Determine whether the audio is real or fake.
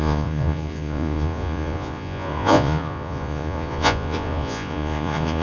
fake